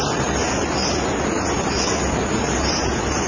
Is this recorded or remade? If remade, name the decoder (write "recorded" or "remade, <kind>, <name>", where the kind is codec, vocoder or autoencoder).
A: recorded